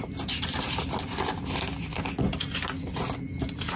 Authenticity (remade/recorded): recorded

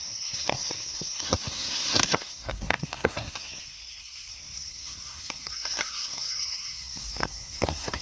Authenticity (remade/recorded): remade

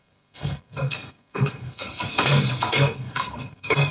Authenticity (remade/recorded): remade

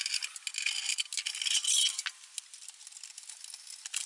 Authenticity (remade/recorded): recorded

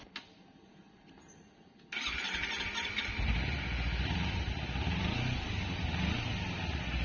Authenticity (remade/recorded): recorded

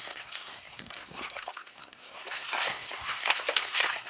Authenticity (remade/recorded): remade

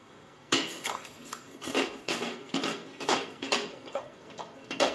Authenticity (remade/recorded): remade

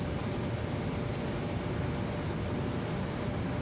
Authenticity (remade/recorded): recorded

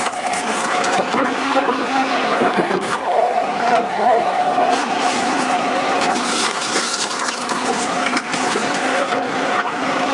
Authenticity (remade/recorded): remade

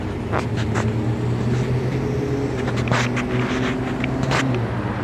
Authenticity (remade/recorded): recorded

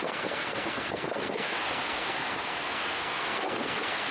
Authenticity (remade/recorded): remade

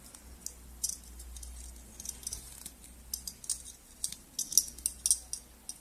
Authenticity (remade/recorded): recorded